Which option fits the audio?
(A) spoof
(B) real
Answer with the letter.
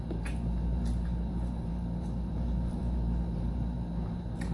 A